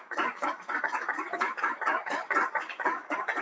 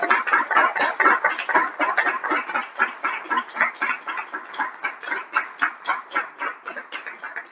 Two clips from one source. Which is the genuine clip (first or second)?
second